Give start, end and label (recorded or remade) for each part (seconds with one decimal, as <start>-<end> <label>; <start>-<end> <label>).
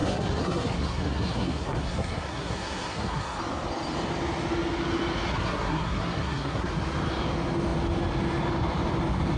0.0-3.4 remade; 3.4-5.3 recorded; 5.3-6.7 remade; 6.7-9.4 recorded